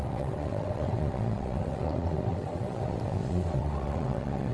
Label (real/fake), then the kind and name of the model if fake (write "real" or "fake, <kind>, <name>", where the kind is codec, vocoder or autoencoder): fake, vocoder, WaveNeXt